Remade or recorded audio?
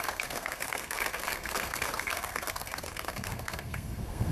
remade